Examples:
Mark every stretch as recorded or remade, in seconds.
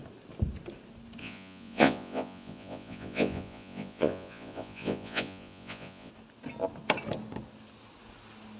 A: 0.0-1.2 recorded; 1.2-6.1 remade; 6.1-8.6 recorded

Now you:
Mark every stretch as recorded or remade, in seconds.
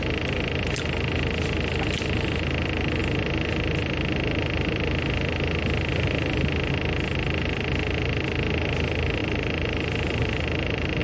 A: 0.0-9.2 recorded; 9.2-11.0 remade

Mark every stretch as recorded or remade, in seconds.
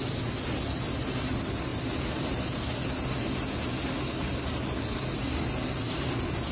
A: 0.0-6.5 recorded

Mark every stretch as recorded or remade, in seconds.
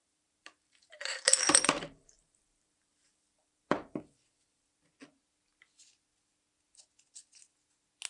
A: 0.0-4.9 remade; 4.9-8.1 recorded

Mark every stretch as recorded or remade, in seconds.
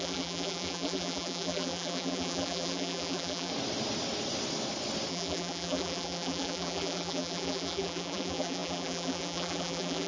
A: 0.0-3.5 remade; 3.5-5.1 recorded; 5.1-10.1 remade